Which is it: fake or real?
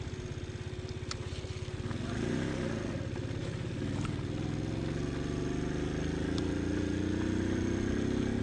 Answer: real